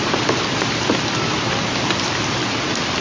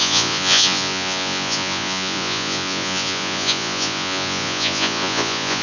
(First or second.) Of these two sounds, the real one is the first